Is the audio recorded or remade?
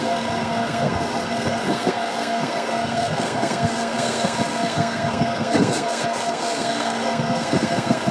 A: remade